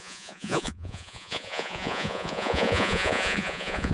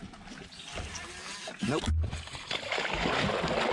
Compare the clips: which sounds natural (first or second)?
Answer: second